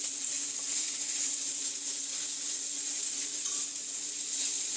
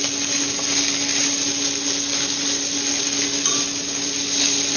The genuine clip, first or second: second